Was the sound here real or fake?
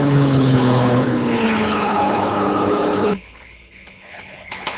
fake